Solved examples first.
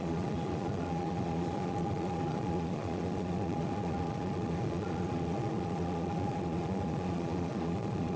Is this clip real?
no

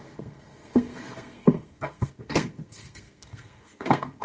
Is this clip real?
no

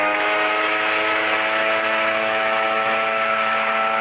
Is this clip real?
no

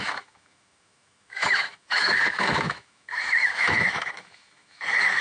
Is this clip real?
no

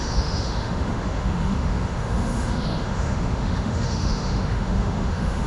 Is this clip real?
no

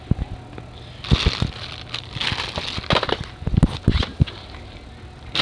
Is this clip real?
yes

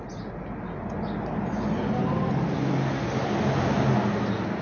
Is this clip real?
yes